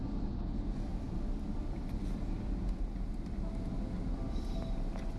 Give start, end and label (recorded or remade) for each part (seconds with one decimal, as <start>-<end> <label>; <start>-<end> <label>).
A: 0.0-0.9 recorded; 0.9-3.7 remade; 3.7-5.2 recorded